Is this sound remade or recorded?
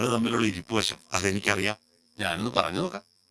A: remade